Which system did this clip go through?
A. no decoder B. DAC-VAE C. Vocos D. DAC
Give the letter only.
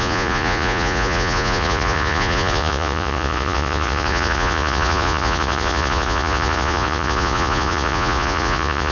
C